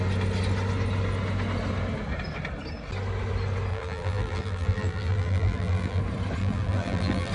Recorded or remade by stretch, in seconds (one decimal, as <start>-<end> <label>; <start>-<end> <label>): 0.0-3.7 recorded; 3.7-6.0 remade; 6.0-6.4 recorded; 6.4-7.3 remade